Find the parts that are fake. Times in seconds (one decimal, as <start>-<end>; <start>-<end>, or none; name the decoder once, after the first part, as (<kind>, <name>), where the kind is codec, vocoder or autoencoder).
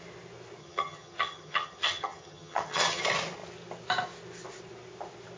0.6-3.0 (vocoder, HiFi-GAN)